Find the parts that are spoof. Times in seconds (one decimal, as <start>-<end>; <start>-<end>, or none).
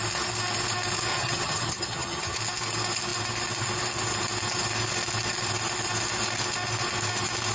1.1-2.4